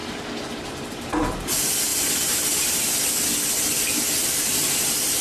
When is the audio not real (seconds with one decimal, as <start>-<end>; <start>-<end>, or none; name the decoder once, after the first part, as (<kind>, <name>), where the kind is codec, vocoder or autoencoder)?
0.7-1.9 (vocoder, BigVGAN v2); 4.4-5.2